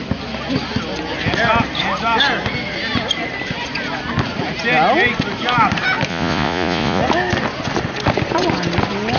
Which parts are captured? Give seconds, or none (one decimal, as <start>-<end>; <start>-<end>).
0.0-6.1; 7.0-9.2